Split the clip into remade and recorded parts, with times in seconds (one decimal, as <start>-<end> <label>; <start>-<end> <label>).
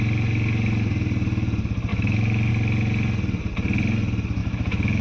0.0-1.9 recorded; 1.9-2.5 remade; 2.5-4.4 recorded; 4.4-5.0 remade